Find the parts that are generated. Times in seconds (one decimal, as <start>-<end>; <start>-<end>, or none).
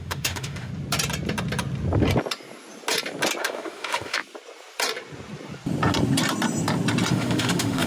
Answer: 0.0-0.7; 3.4-4.2; 7.1-7.9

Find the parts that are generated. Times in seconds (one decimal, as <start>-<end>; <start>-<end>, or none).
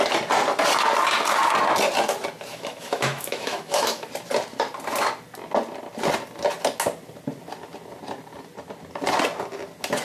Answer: 2.5-4.1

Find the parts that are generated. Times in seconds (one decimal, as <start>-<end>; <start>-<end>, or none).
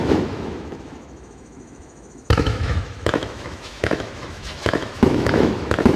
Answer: 0.0-6.0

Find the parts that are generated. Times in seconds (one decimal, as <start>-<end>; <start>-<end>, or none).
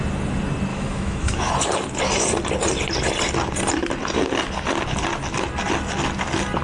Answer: 0.7-1.5